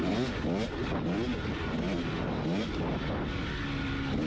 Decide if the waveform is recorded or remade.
recorded